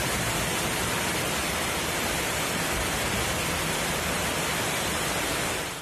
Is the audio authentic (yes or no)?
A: no